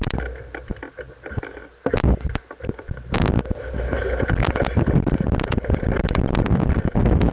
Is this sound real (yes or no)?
yes